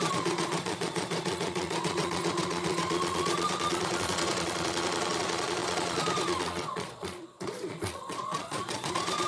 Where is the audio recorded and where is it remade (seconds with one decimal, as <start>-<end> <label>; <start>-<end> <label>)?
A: 0.0-9.3 remade